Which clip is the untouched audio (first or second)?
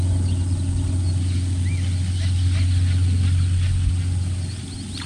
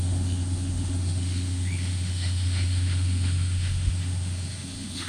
first